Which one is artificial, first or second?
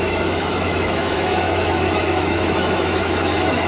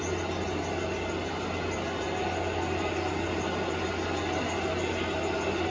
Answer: first